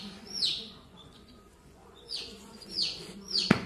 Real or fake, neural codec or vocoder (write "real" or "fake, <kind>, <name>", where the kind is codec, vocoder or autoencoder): fake, vocoder, Vocos